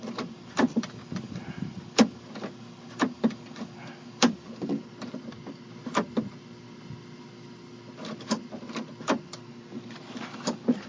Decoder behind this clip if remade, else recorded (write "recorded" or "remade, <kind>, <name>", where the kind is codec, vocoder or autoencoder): remade, vocoder, BigVGAN v2